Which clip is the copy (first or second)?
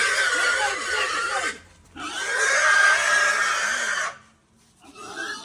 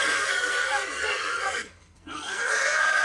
second